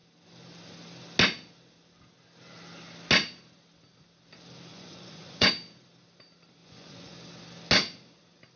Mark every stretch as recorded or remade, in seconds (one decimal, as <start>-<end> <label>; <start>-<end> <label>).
0.0-4.7 recorded; 4.7-5.5 remade; 5.5-6.6 recorded; 6.6-7.1 remade; 7.1-8.6 recorded